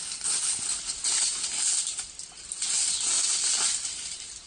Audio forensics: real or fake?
real